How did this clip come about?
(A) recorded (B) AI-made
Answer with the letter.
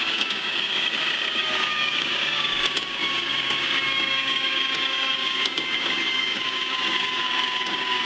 B